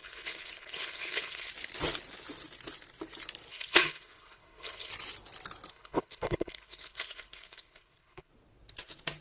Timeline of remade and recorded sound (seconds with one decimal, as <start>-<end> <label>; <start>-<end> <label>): 0.0-1.5 remade; 1.5-3.5 recorded; 3.5-4.9 remade; 4.9-5.7 recorded; 5.7-8.3 remade; 8.3-9.2 recorded